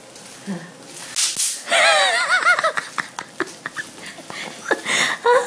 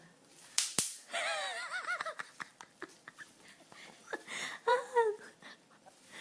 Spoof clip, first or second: second